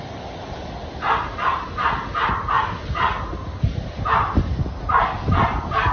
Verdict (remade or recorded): recorded